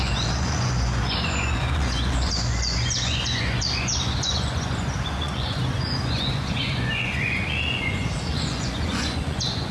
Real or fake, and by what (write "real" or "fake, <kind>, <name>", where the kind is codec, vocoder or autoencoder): fake, vocoder, Vocos